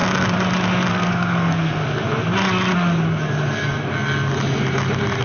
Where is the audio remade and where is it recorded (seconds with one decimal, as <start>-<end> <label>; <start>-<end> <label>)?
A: 0.0-0.9 recorded; 0.9-1.8 remade; 1.8-5.2 recorded